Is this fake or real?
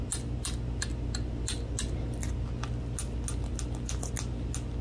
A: real